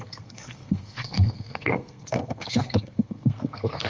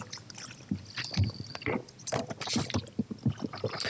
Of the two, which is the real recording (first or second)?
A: second